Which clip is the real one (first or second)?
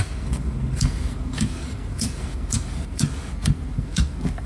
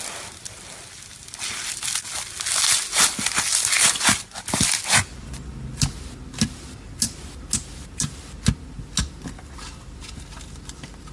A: second